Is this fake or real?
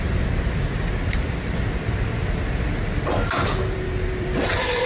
fake